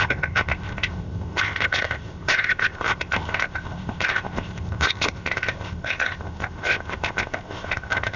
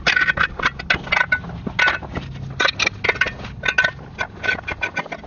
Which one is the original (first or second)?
second